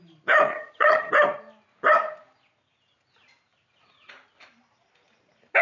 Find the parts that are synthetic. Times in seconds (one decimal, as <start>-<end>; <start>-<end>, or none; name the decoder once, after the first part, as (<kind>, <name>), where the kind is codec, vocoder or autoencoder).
0.5-1.1 (vocoder, HiFi-GAN)